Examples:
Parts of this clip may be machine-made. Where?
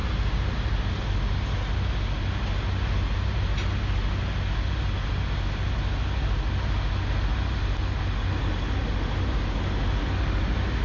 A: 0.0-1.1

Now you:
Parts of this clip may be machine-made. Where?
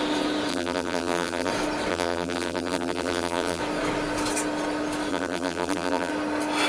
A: 0.5-1.5; 1.9-3.6; 5.1-6.1